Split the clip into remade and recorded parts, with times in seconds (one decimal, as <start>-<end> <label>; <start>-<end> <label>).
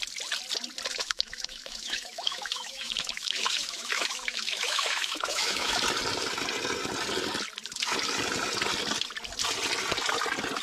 0.0-0.9 recorded; 0.9-5.8 remade; 5.8-10.6 recorded